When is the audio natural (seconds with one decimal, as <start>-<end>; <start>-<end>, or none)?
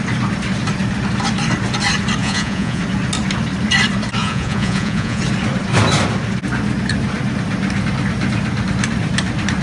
0.0-2.2; 2.8-4.2; 5.2-9.6